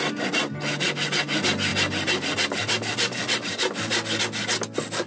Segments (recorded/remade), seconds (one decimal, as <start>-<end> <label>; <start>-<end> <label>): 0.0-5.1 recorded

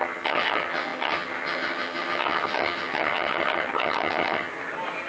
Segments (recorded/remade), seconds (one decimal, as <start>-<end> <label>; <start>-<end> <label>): 0.0-4.5 remade; 4.5-5.1 recorded

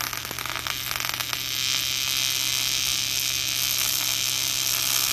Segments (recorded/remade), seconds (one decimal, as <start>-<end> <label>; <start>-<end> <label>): 0.0-5.1 recorded

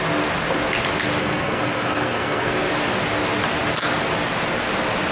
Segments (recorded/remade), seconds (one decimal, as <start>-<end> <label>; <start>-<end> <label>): 0.0-1.2 recorded; 1.2-2.7 remade; 2.7-5.1 recorded

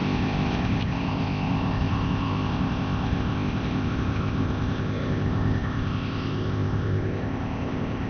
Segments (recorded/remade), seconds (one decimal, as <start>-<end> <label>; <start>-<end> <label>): 0.0-8.1 remade

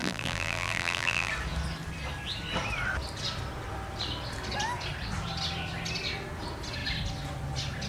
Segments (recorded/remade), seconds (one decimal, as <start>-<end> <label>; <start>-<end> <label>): 0.0-1.3 remade; 1.3-7.9 recorded

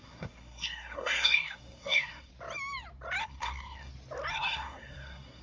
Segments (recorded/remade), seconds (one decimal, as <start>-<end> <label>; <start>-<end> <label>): 0.0-2.3 remade; 2.3-3.2 recorded; 3.2-3.9 remade; 3.9-4.3 recorded; 4.3-5.4 remade